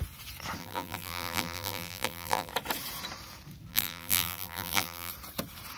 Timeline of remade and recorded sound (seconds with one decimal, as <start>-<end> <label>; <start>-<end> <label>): 0.0-0.6 recorded; 0.6-2.5 remade; 2.5-3.7 recorded; 3.7-5.1 remade; 5.1-5.8 recorded